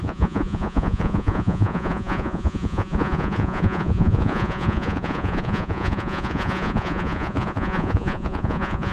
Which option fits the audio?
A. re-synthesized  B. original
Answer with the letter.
A